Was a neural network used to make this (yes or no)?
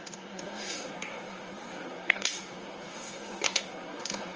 yes